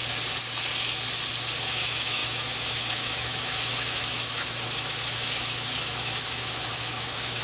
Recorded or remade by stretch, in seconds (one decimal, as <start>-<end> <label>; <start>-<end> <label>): 0.0-1.6 recorded; 1.6-7.4 remade